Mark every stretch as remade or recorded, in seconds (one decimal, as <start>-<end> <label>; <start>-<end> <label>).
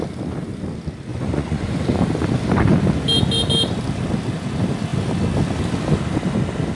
0.0-1.1 recorded; 1.1-1.8 remade; 1.8-6.7 recorded